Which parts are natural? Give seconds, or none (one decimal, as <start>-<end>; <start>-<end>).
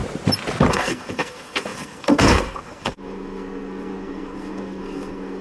0.0-0.7